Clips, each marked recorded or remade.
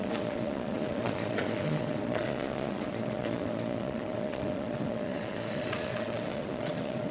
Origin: remade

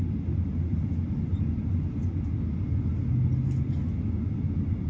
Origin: recorded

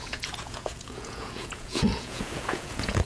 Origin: remade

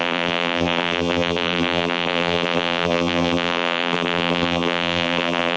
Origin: remade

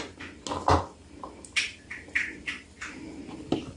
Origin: recorded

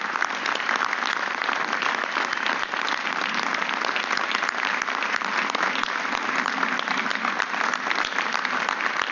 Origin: recorded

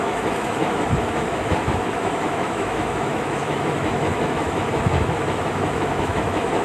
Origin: remade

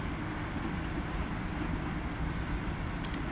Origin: recorded